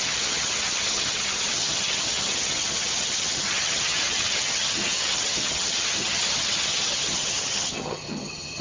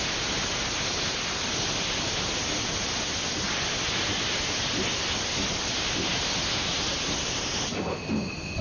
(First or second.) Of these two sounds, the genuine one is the second